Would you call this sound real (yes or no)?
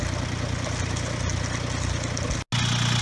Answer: yes